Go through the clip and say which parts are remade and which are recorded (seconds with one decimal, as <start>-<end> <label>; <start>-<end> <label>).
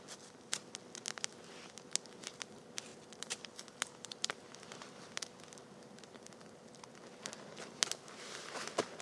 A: 0.0-2.9 recorded; 2.9-7.2 remade; 7.2-9.0 recorded